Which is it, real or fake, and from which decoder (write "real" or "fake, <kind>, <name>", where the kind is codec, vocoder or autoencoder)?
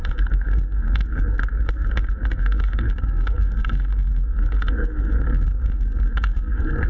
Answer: fake, codec, SNAC